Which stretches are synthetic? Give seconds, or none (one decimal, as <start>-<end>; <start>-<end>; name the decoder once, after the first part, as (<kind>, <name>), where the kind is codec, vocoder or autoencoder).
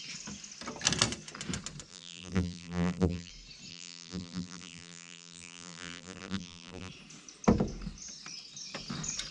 1.9-3.3 (vocoder, BigVGAN v2); 3.7-6.9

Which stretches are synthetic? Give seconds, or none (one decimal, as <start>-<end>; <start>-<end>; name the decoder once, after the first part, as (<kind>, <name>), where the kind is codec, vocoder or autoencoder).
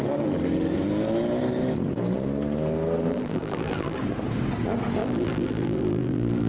3.1-4.0 (vocoder, BigVGAN v2); 5.0-6.5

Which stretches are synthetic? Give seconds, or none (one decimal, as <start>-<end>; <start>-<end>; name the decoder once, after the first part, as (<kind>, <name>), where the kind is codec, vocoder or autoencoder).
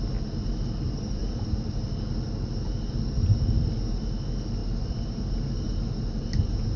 4.6-6.8 (vocoder, BigVGAN v2)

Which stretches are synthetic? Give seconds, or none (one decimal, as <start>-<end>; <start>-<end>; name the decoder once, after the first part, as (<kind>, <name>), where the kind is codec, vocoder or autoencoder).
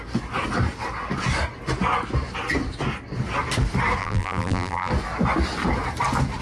4.0-4.9 (vocoder, BigVGAN v2)